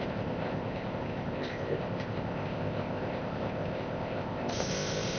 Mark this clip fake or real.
fake